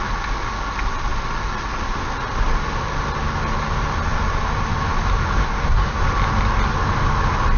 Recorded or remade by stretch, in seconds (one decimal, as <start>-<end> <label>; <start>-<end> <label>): 0.0-5.4 recorded; 5.4-6.0 remade; 6.0-7.6 recorded